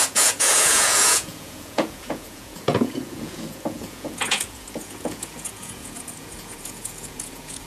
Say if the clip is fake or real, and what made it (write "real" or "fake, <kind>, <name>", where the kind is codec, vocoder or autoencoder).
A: fake, vocoder, Vocos